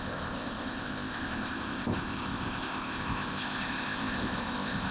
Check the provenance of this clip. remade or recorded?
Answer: remade